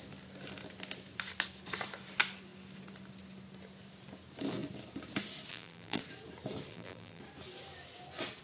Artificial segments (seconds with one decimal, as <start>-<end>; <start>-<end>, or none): 5.5-6.0; 6.7-7.2